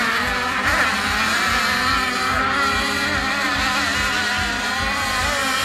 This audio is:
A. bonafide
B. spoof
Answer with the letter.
A